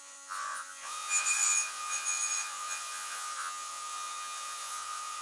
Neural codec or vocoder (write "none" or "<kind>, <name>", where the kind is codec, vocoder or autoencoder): vocoder, Vocos